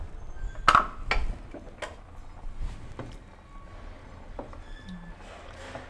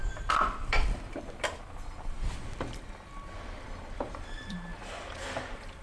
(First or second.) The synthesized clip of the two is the second